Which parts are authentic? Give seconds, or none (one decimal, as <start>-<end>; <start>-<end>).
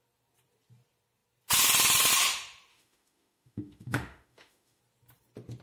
0.0-2.7; 4.8-5.6